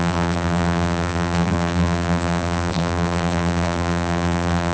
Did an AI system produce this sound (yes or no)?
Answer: yes